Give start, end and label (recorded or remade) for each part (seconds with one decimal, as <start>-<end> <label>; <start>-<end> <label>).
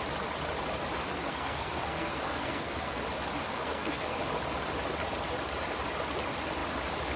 0.0-1.1 recorded; 1.1-3.0 remade; 3.0-3.4 recorded; 3.4-4.2 remade; 4.2-7.2 recorded